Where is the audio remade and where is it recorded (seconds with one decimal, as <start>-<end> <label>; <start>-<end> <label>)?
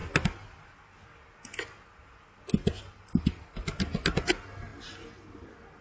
0.0-5.8 recorded